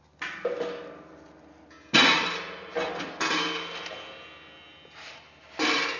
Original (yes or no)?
yes